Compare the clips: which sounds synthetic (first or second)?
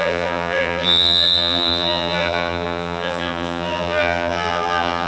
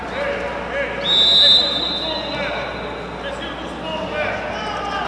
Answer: first